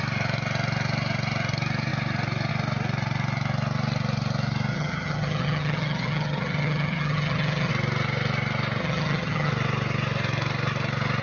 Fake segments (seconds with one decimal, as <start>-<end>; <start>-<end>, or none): 4.7-7.7; 8.8-9.5